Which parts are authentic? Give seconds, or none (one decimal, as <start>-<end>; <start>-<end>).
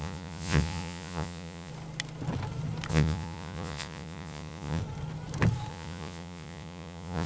1.7-2.9; 4.8-5.7